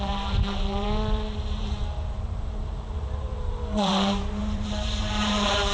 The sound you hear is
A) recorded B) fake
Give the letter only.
B